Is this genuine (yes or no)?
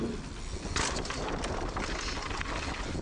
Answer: yes